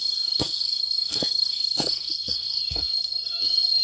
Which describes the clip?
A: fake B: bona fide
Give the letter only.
A